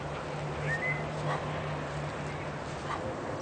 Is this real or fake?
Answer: real